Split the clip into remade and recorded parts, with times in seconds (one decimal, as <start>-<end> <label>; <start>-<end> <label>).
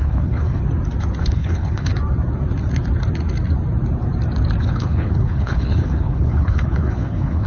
0.0-0.6 remade; 0.6-1.2 recorded; 1.2-1.9 remade; 1.9-4.6 recorded; 4.6-7.5 remade